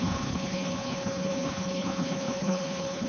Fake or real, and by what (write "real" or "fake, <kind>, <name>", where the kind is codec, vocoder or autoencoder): fake, codec, HILCodec